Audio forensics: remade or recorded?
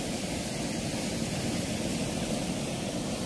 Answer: recorded